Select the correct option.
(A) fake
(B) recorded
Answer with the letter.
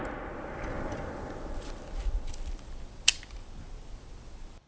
A